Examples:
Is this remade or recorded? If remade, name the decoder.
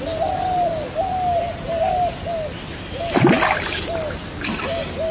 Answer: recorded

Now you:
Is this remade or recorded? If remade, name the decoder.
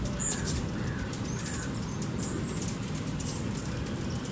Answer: recorded